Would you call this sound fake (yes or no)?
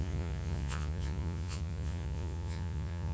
yes